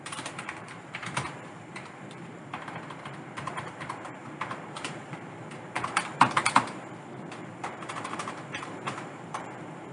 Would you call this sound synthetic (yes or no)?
yes